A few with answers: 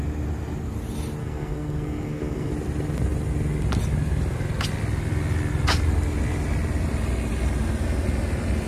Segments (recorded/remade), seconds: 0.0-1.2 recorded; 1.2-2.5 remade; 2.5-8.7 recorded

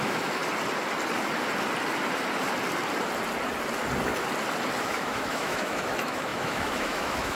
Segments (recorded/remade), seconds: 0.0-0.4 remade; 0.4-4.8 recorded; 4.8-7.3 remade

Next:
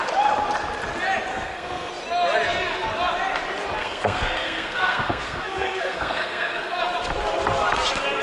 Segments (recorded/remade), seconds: 0.0-1.3 recorded; 1.3-1.9 remade; 1.9-3.8 recorded; 3.8-6.8 remade; 6.8-8.2 recorded

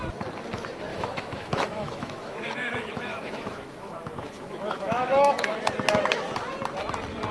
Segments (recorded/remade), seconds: 0.0-0.9 recorded; 0.9-5.3 remade; 5.3-7.3 recorded

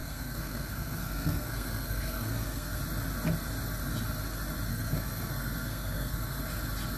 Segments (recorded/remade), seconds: 0.0-2.8 remade; 2.8-4.7 recorded; 4.7-6.4 remade; 6.4-7.0 recorded

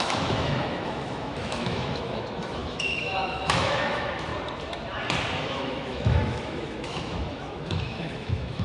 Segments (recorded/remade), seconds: 0.0-4.3 remade; 4.3-5.4 recorded; 5.4-8.6 remade